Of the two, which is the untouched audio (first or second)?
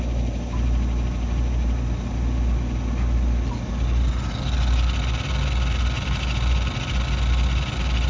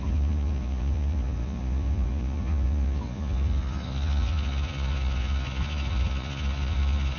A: first